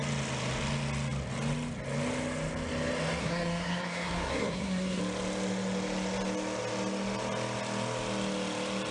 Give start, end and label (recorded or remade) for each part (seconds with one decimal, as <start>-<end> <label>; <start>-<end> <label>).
0.0-3.2 recorded; 3.2-5.0 remade; 5.0-8.9 recorded